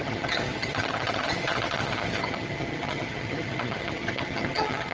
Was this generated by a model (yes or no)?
yes